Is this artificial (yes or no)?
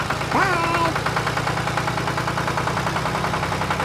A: no